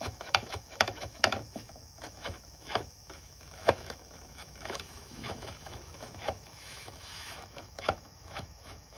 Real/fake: fake